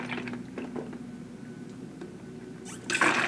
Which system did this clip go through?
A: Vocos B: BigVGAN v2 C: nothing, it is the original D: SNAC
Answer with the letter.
C